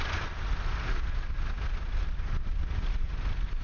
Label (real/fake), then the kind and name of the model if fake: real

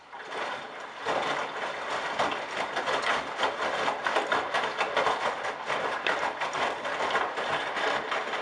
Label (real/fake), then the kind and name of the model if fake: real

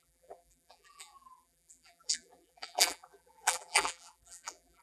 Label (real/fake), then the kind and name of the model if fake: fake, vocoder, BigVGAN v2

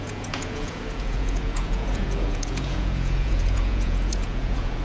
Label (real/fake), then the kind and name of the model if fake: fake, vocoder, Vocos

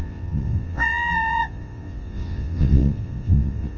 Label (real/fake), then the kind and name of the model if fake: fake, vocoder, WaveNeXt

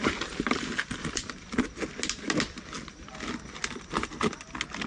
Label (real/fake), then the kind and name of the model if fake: real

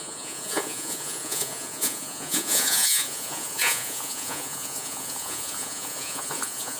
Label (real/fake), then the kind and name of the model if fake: fake, vocoder, Vocos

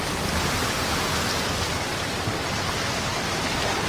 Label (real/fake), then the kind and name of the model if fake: real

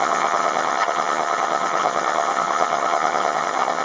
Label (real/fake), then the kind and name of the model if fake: fake, vocoder, HiFi-GAN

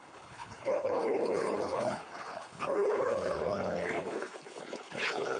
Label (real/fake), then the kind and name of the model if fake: fake, codec, HILCodec